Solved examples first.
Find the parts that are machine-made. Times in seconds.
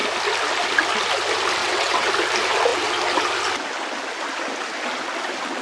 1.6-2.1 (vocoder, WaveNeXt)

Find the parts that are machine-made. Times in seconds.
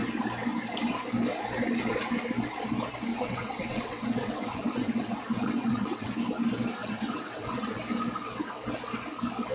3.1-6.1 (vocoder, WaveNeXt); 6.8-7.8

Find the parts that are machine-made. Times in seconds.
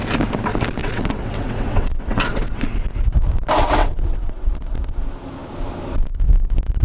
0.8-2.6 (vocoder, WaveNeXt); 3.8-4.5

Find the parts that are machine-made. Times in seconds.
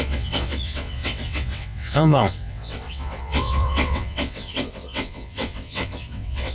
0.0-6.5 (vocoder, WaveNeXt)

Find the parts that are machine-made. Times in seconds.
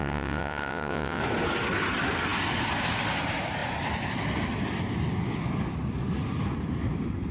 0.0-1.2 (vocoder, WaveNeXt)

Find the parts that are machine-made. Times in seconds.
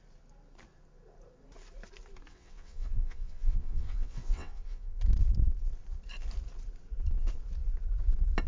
2.3-5.0 (vocoder, WaveNeXt)